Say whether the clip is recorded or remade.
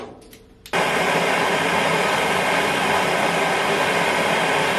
recorded